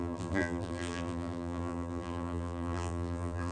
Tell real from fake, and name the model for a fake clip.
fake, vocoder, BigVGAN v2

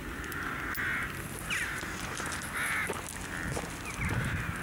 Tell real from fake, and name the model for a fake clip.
real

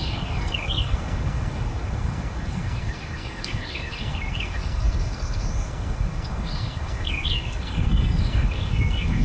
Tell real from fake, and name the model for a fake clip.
fake, codec, SNAC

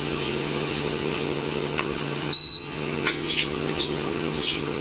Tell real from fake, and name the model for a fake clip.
fake, vocoder, HiFi-GAN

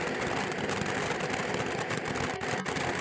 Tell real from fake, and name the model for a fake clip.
real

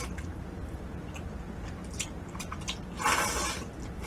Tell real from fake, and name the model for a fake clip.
real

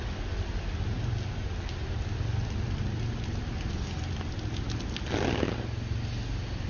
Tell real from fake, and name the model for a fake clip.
real